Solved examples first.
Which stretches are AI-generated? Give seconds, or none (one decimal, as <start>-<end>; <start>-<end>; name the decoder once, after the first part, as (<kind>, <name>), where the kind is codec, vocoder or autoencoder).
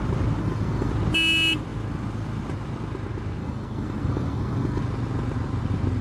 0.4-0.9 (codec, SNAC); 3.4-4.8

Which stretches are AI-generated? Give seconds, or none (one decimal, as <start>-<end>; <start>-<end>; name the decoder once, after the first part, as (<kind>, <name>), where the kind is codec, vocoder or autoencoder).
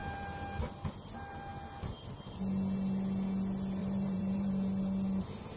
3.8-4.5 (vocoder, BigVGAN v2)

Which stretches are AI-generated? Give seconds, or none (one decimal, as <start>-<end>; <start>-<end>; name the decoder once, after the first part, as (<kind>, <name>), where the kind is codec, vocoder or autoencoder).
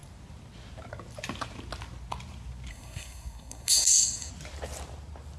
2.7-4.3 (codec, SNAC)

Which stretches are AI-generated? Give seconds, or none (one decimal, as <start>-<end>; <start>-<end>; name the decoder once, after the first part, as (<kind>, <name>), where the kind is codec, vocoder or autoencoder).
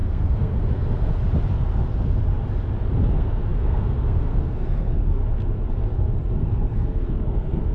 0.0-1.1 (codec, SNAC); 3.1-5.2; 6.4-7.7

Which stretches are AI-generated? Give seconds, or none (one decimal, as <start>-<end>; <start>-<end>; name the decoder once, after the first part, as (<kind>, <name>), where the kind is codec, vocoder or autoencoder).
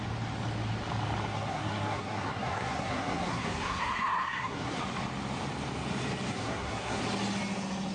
1.2-4.8 (codec, SNAC); 6.3-7.0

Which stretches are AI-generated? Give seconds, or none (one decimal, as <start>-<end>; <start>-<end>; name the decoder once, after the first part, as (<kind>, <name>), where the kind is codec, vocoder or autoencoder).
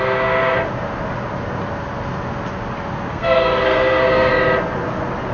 0.0-0.6 (codec, SNAC); 3.1-4.3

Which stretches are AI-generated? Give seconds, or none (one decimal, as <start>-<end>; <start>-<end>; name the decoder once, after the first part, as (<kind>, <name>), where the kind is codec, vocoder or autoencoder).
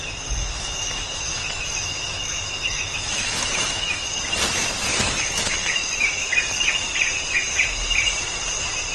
0.4-4.3 (autoencoder, DAC-VAE); 4.9-6.3